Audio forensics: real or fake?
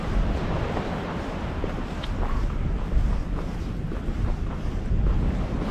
real